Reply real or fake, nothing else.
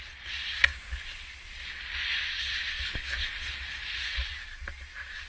real